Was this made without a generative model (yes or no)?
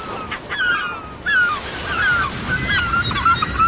yes